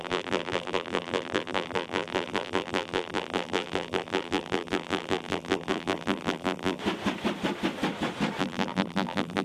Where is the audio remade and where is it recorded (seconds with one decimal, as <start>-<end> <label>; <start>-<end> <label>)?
0.0-6.8 remade; 6.8-8.4 recorded; 8.4-9.4 remade